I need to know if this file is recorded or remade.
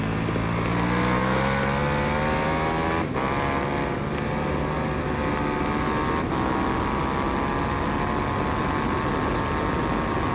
recorded